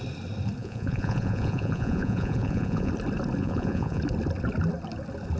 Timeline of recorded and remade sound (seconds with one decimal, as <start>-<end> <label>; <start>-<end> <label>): 0.0-0.6 recorded; 0.6-2.9 remade; 2.9-3.4 recorded; 3.4-4.0 remade; 4.0-5.4 recorded

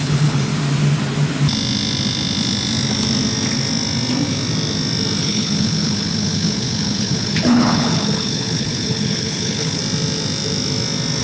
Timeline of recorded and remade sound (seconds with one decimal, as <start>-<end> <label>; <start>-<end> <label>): 0.0-0.5 remade; 0.5-5.2 recorded; 5.2-9.8 remade; 9.8-11.2 recorded